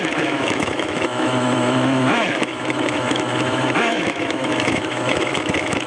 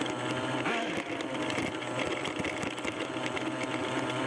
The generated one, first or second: first